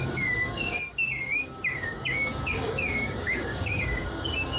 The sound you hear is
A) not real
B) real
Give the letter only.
A